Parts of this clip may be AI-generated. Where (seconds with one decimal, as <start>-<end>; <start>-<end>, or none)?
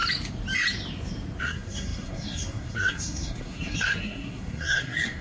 1.4-5.2